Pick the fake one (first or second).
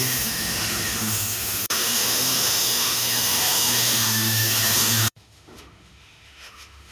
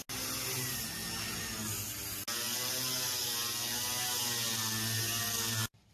first